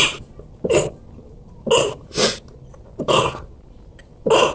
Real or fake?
real